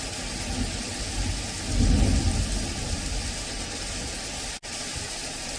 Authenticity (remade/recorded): recorded